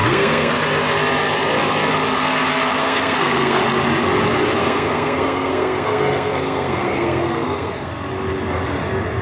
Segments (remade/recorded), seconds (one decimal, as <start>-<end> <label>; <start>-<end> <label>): 0.0-0.5 remade; 0.5-2.8 recorded; 2.8-3.6 remade; 3.6-4.6 recorded; 4.6-7.9 remade; 7.9-9.2 recorded